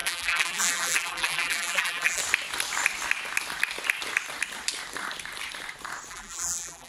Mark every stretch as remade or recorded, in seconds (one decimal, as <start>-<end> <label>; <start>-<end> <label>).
0.0-2.2 remade; 2.2-6.1 recorded; 6.1-6.9 remade